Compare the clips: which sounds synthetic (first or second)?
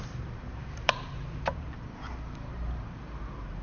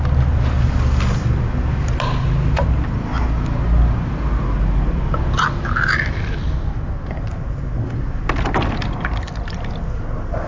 first